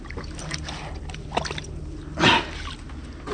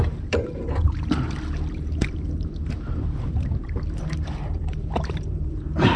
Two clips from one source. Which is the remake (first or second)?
second